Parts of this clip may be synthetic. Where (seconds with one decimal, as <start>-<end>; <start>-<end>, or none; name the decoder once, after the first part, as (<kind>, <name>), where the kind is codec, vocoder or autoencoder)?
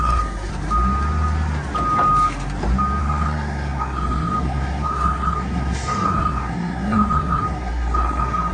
0.0-0.5 (codec, SNAC); 3.0-8.5